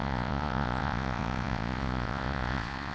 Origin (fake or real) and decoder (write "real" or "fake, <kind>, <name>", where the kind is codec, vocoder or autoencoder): fake, vocoder, Vocos